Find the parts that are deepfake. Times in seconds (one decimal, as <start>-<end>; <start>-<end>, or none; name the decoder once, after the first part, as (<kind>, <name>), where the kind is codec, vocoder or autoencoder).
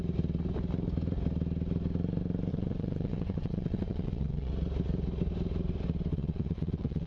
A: 2.5-4.5 (vocoder, WaveNeXt); 6.1-7.1